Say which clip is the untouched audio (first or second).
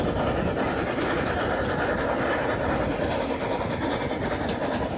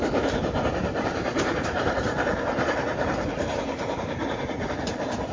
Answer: first